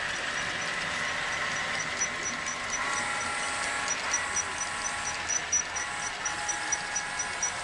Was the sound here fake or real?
real